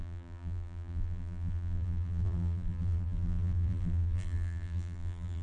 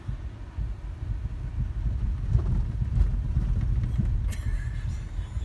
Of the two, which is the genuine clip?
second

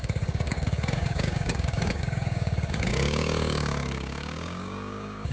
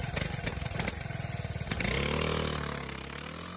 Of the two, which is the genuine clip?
second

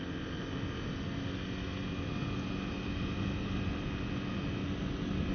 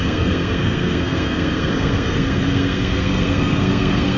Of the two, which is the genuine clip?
first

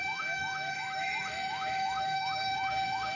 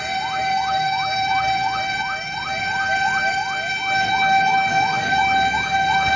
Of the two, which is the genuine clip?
second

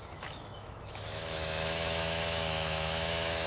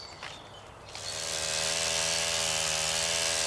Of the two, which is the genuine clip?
second